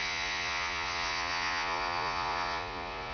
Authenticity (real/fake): fake